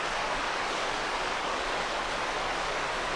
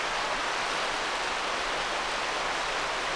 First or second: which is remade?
first